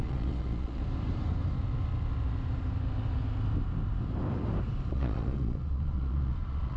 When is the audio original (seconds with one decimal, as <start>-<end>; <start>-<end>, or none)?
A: 0.8-4.9